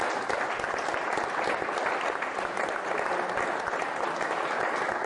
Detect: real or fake real